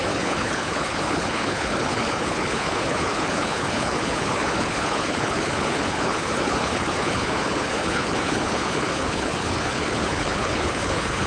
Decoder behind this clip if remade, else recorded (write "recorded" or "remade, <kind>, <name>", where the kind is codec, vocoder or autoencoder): remade, codec, HILCodec